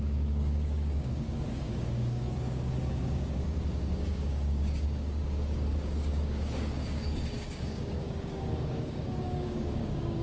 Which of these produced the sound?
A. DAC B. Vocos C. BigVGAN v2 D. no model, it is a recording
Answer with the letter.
A